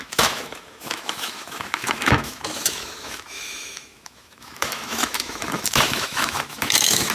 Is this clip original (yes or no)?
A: no